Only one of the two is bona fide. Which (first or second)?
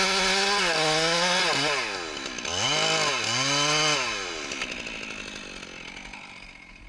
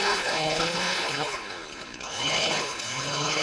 first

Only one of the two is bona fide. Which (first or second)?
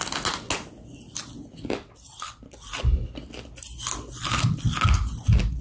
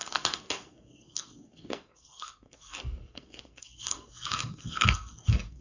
first